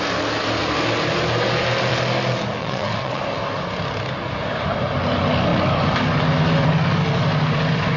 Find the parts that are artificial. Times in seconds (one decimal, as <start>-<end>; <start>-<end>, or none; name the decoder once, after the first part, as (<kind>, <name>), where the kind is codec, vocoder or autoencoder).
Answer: 2.6-3.2 (vocoder, WaveNeXt)